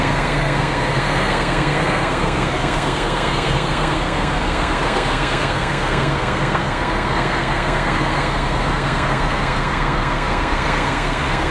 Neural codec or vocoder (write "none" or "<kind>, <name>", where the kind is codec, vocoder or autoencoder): codec, SNAC